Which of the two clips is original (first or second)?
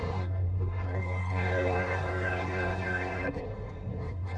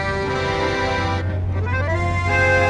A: second